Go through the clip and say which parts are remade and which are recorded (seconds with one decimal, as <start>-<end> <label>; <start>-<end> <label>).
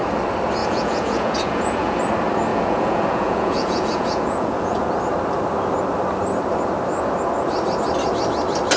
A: 0.0-0.6 recorded; 0.6-2.0 remade; 2.0-2.5 recorded; 2.5-4.9 remade; 4.9-8.8 recorded